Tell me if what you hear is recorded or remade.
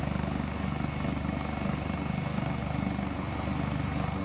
recorded